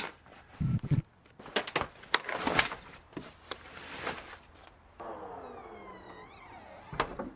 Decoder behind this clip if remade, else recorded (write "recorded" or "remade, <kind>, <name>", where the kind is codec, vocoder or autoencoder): recorded